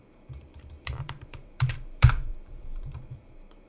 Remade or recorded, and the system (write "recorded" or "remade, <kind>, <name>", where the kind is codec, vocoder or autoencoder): remade, vocoder, BigVGAN v2